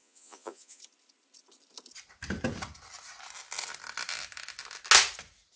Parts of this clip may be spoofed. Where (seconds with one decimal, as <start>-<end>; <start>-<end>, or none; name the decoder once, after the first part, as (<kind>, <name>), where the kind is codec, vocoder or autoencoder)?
0.0-0.8 (vocoder, Vocos)